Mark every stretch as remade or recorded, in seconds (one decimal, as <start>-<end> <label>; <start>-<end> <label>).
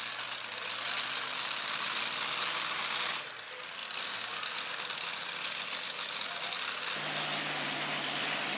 0.0-8.6 recorded